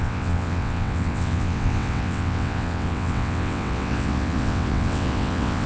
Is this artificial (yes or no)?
yes